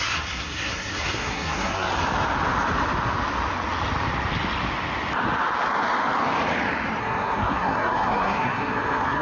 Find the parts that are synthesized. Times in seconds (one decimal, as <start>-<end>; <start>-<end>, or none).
0.0-1.9; 7.0-9.2